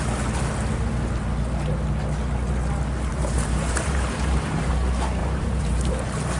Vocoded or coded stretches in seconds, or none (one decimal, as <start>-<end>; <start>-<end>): 3.1-4.7; 5.2-5.9